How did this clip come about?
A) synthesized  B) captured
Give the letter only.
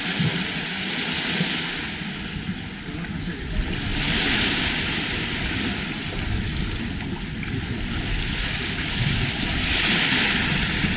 B